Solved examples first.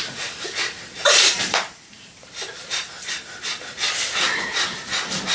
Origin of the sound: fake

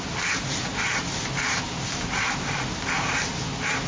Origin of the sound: fake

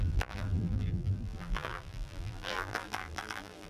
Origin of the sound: fake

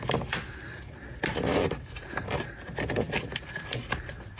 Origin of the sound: fake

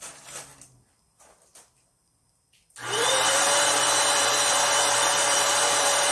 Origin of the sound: fake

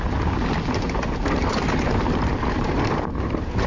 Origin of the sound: fake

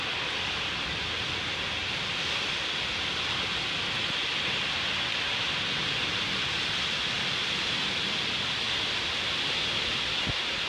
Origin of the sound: real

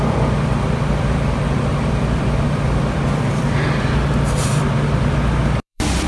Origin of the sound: fake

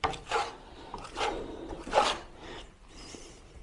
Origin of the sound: fake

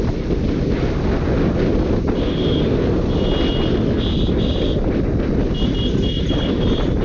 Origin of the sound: real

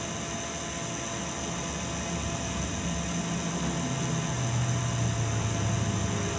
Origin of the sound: real